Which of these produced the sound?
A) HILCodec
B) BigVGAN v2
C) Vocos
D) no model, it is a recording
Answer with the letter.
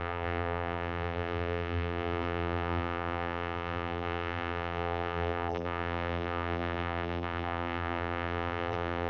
B